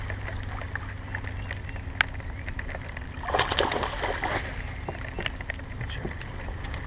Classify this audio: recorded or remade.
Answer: recorded